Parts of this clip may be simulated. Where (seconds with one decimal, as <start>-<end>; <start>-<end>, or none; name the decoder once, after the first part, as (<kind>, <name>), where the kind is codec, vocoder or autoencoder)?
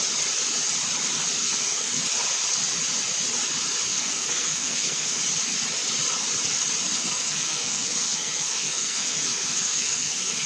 1.4-2.0 (codec, SNAC); 3.9-5.2; 6.9-10.5